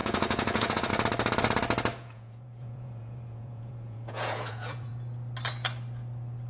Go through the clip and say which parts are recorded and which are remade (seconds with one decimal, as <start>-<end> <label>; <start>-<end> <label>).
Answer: 0.0-0.9 remade; 0.9-1.9 recorded; 1.9-4.9 remade; 4.9-6.5 recorded